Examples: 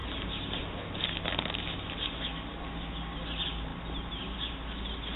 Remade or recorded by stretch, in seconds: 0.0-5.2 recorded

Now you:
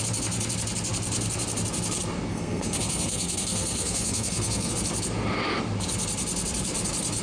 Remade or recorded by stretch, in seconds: 0.0-2.3 recorded; 2.3-4.7 remade; 4.7-7.2 recorded